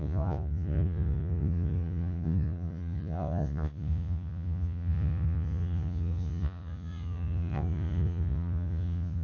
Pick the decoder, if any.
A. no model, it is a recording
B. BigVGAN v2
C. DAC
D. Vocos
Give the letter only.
D